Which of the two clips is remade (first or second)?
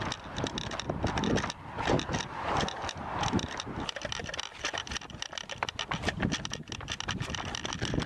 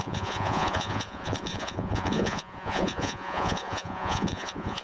second